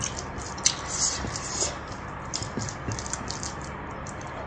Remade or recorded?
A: recorded